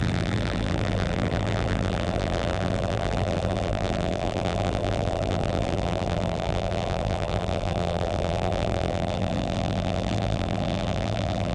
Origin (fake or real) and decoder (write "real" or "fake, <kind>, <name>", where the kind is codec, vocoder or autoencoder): fake, vocoder, BigVGAN v2